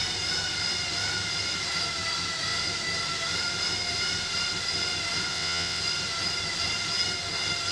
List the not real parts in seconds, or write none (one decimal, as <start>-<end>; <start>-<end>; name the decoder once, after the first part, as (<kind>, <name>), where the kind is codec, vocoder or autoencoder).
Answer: 5.3-5.8 (vocoder, WaveNeXt)